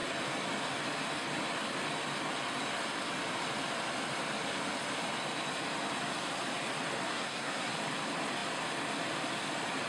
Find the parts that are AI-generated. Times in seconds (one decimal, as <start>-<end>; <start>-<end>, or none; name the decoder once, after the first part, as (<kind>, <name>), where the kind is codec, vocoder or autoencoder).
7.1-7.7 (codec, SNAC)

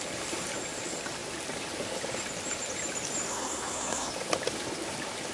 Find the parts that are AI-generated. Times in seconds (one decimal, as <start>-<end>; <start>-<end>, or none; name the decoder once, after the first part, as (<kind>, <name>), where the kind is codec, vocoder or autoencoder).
3.3-4.1 (codec, SNAC)

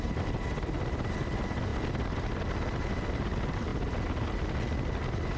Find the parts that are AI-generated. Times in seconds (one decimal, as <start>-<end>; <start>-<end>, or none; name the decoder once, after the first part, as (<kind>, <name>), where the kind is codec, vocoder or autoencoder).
none